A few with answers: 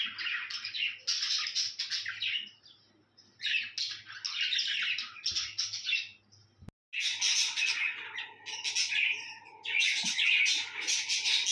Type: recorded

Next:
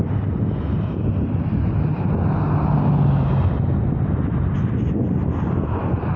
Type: recorded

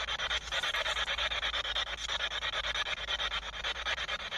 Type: recorded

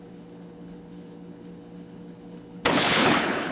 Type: remade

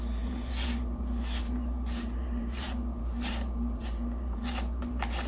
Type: remade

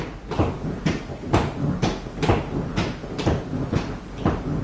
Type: recorded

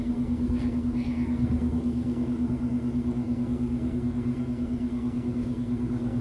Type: remade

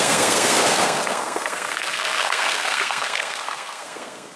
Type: remade